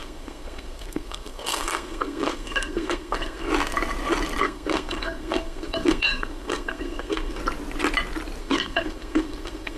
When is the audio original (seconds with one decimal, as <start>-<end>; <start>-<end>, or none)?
3.5-4.4; 7.4-8.4